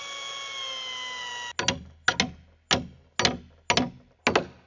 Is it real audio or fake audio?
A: real